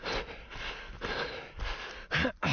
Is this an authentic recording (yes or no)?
yes